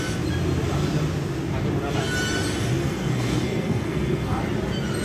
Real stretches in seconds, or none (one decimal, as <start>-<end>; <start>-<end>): 0.0-2.8; 4.4-5.0